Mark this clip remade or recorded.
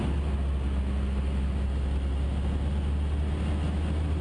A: recorded